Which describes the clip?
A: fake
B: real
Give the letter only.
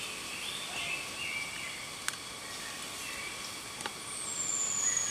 B